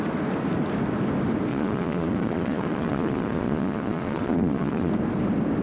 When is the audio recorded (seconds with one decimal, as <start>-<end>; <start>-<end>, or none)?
0.0-1.5; 4.9-5.6